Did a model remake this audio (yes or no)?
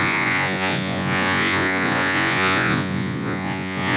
yes